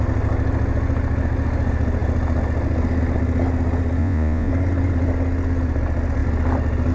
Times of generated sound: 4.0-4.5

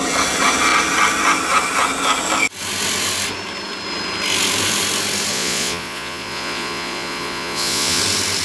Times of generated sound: 5.3-8.0

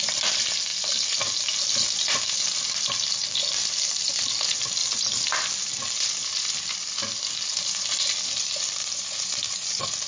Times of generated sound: none

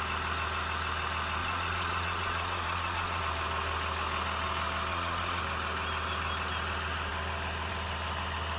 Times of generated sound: 1.4-3.2; 4.9-5.4

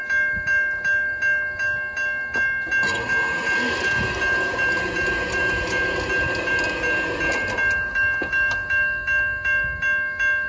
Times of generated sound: none

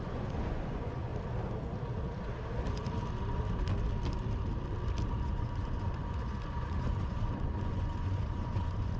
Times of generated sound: 0.0-1.1; 5.2-9.0

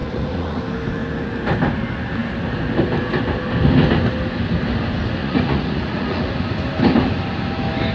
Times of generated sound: 0.0-0.6; 5.2-6.3

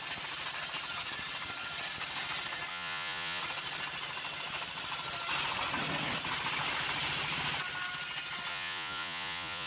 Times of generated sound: 2.7-3.4; 8.5-9.7